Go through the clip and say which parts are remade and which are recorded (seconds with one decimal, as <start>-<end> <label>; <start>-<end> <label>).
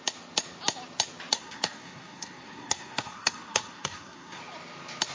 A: 0.0-1.3 recorded; 1.3-4.4 remade; 4.4-5.1 recorded